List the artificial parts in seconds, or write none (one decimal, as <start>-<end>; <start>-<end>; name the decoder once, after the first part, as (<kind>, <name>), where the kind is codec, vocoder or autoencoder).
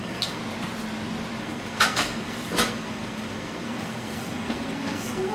0.0-0.4 (codec, SNAC); 1.4-5.3